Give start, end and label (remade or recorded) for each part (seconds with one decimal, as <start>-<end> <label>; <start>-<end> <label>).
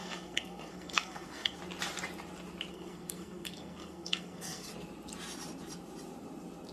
0.0-1.6 remade; 1.6-2.7 recorded; 2.7-4.7 remade; 4.7-6.7 recorded